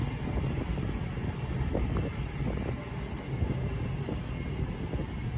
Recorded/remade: recorded